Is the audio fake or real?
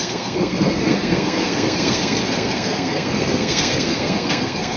fake